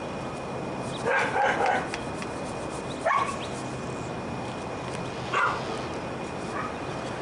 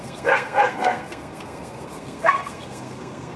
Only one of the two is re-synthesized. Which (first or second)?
second